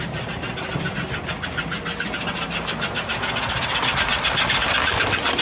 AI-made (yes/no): no